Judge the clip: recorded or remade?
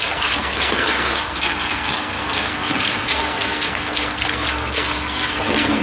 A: remade